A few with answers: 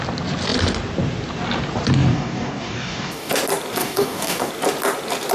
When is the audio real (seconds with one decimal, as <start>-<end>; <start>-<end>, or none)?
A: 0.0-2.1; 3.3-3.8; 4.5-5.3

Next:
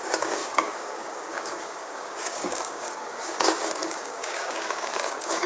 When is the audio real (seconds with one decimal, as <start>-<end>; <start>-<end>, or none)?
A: none

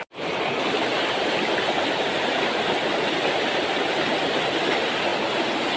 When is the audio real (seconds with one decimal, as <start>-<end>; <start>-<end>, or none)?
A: 0.0-5.8

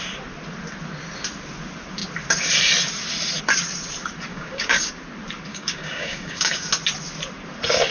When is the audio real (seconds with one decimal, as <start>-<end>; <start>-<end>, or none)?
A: 0.0-4.3; 4.9-5.5; 6.7-7.9

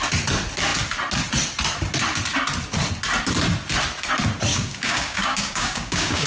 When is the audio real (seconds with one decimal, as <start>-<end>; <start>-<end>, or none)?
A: 0.0-4.5

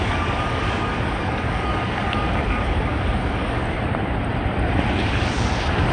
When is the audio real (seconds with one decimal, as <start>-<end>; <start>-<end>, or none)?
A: 3.6-4.9